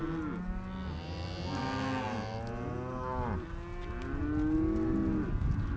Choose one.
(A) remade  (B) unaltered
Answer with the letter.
B